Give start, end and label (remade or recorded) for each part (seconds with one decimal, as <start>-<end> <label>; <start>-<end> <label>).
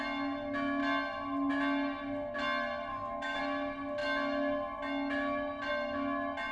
0.0-2.9 recorded; 2.9-3.4 remade; 3.4-6.5 recorded